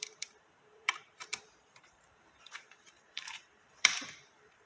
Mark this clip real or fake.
fake